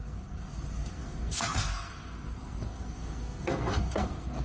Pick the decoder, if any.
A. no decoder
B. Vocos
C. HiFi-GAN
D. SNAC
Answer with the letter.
D